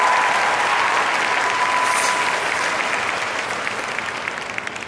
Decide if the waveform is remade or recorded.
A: recorded